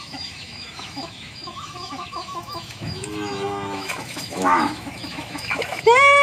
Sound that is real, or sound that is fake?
fake